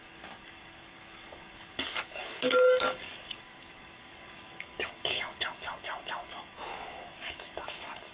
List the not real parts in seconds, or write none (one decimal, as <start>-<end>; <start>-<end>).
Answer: 0.0-8.1

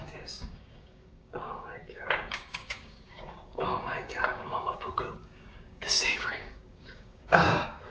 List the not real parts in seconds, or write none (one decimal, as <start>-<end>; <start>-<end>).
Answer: 0.0-7.9

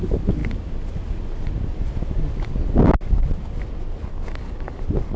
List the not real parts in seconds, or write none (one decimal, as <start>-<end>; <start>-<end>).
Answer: 4.1-4.8

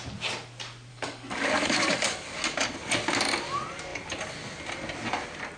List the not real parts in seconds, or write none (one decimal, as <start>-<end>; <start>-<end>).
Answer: 0.9-2.4

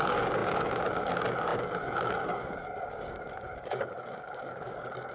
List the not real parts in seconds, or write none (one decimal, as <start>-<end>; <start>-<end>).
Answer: 0.0-5.1

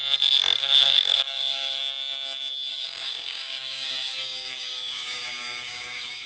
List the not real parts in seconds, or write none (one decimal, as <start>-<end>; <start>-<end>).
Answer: 0.6-1.8; 2.7-6.3

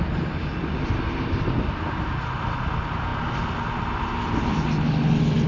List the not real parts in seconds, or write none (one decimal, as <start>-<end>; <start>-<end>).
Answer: none